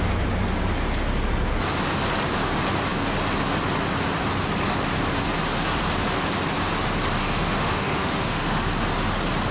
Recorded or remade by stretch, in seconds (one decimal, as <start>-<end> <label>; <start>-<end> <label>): 0.0-7.2 recorded; 7.2-8.7 remade; 8.7-9.5 recorded